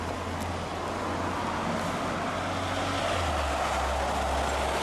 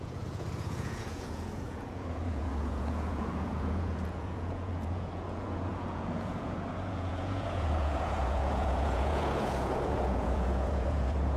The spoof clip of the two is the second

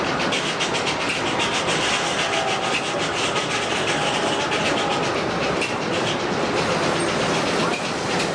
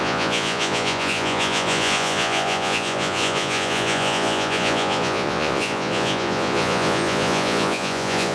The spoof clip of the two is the second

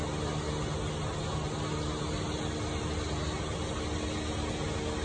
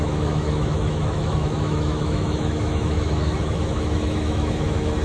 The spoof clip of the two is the second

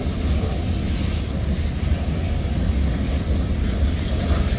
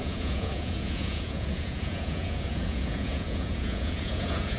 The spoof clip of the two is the second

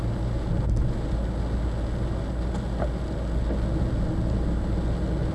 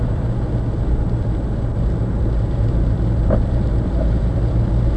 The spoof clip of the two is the second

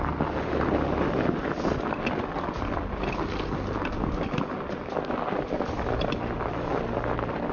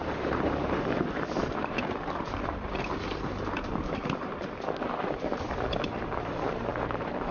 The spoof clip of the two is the second